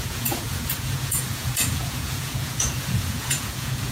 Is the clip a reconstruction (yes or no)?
yes